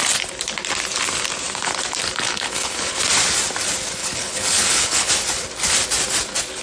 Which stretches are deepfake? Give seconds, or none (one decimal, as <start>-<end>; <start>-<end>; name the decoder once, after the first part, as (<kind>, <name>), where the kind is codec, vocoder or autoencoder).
2.3-3.0 (codec, HILCodec); 4.0-5.1